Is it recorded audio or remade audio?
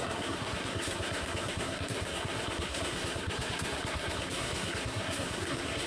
remade